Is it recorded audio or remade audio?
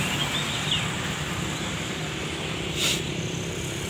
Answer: recorded